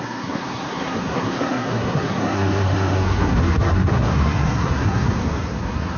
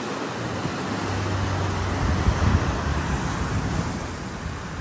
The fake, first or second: first